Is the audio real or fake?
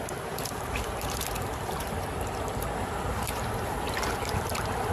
fake